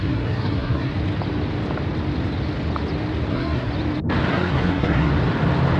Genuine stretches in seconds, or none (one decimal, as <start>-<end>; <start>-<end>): 0.9-3.3; 3.7-4.3; 5.1-5.8